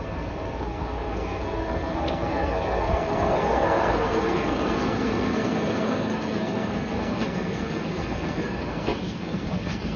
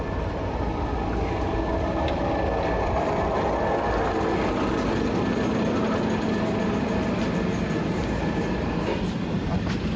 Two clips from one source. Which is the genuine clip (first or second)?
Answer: second